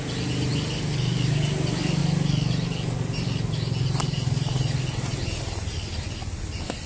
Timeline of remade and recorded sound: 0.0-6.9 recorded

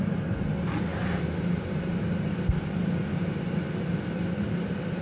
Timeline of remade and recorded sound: 0.0-5.0 recorded

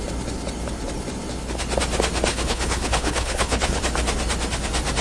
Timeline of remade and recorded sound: 0.0-2.3 recorded; 2.3-3.8 remade; 3.8-5.0 recorded

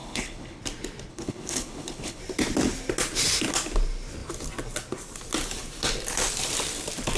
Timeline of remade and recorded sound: 0.0-0.6 remade; 0.6-1.1 recorded; 1.1-2.2 remade; 2.2-7.2 recorded

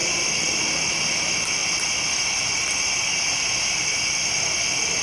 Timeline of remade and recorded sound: 0.0-5.0 recorded

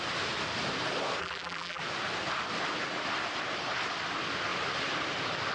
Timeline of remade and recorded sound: 0.0-1.2 recorded; 1.2-1.8 remade; 1.8-5.5 recorded

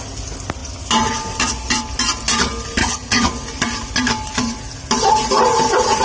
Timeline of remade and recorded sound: 0.0-2.8 recorded; 2.8-3.3 remade; 3.3-6.0 recorded